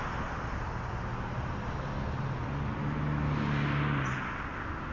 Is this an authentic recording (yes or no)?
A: yes